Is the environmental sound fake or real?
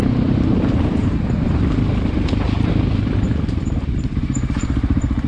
fake